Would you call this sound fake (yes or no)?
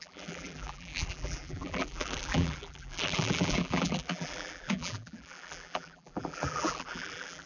yes